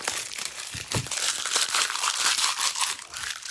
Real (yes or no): no